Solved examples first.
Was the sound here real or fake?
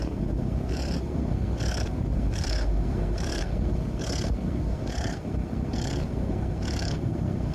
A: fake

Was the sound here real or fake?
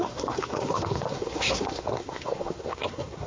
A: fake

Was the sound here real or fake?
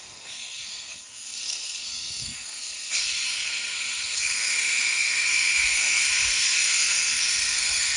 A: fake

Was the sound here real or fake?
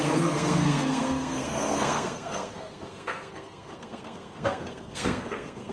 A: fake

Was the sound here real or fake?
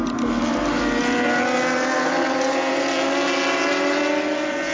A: real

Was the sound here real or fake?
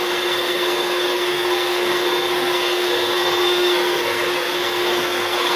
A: fake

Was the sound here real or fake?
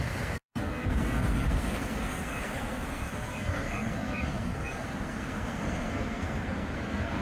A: fake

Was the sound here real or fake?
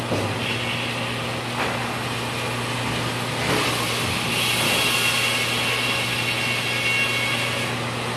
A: real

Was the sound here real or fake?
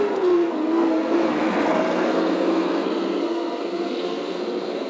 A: fake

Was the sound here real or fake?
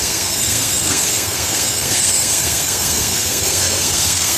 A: fake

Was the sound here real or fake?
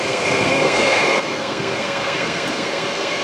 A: fake